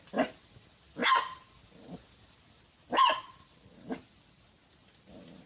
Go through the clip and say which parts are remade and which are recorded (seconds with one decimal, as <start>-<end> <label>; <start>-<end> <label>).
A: 0.0-5.5 recorded